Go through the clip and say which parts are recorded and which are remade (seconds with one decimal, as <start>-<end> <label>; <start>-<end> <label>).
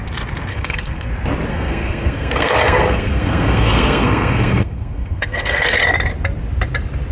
0.0-0.5 recorded; 0.5-1.1 remade; 1.1-1.5 recorded; 1.5-5.8 remade; 5.8-7.1 recorded